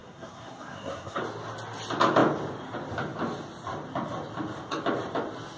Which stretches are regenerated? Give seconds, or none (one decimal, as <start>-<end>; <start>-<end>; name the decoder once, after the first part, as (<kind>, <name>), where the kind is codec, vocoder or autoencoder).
0.0-1.2 (codec, SNAC)